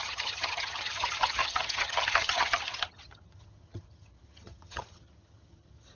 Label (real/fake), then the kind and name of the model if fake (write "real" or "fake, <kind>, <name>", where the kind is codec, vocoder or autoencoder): fake, vocoder, HiFi-GAN